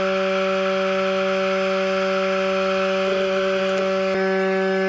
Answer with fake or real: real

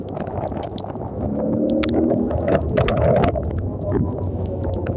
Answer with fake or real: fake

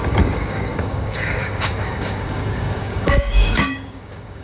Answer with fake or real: fake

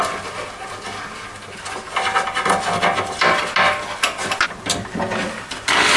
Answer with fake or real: real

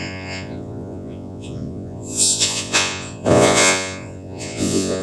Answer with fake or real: fake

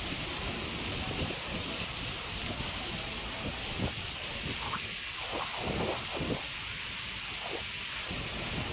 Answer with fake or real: real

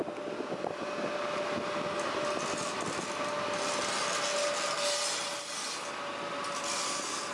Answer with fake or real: real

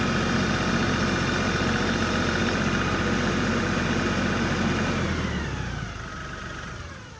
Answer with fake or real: real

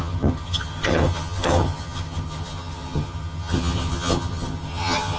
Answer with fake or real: fake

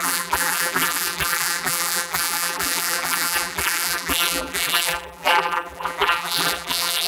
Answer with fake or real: fake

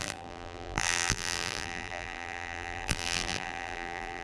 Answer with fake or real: fake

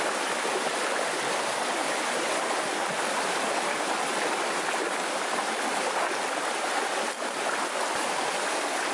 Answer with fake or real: real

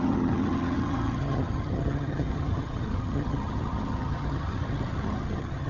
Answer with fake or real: fake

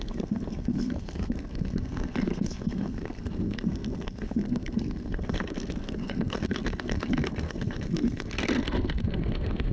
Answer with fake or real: fake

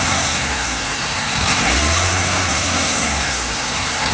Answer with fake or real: fake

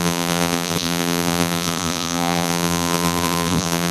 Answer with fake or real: fake